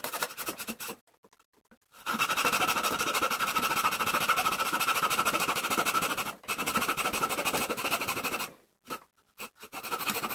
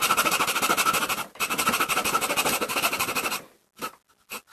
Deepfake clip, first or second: first